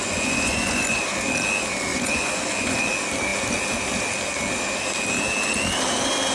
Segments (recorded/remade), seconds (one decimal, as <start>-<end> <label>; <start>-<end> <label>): 0.0-1.0 remade; 1.0-1.9 recorded; 1.9-2.9 remade; 2.9-6.3 recorded